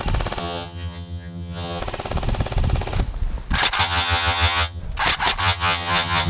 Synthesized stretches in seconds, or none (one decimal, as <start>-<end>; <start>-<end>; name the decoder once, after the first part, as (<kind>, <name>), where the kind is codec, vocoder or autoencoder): 0.4-1.8 (vocoder, HiFi-GAN); 3.8-4.8; 5.4-6.3